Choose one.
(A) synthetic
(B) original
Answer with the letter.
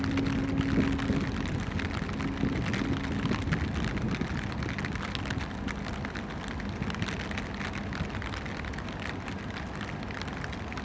B